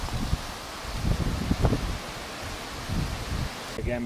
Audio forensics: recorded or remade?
recorded